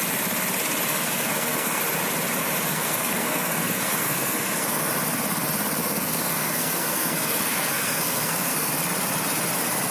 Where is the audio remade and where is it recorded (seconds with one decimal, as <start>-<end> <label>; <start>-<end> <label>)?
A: 0.0-0.9 recorded; 0.9-1.8 remade; 1.8-2.7 recorded; 2.7-4.9 remade; 4.9-5.8 recorded; 5.8-8.7 remade; 8.7-9.9 recorded